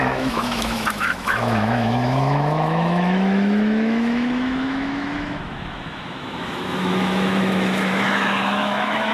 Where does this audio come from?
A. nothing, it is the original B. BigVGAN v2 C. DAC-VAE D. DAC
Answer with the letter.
C